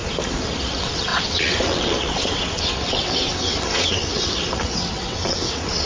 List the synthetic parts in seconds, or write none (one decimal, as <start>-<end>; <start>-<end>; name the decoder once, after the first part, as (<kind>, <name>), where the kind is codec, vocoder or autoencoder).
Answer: 0.7-5.9 (vocoder, WaveNeXt)